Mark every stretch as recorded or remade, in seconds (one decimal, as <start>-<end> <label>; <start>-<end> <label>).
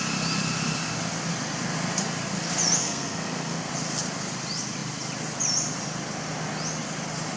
0.0-2.8 recorded; 2.8-3.7 remade; 3.7-7.4 recorded